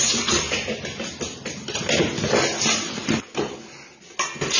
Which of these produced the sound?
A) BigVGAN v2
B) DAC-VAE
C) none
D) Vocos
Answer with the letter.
C